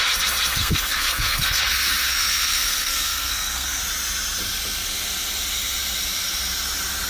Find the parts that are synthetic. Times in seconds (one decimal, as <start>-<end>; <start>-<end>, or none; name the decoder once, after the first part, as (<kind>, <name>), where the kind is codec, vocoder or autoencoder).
0.5-1.6 (codec, SNAC); 2.0-3.8